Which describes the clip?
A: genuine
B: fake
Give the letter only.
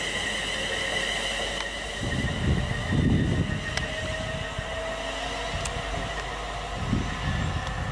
A